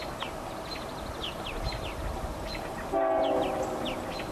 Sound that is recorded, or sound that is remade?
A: recorded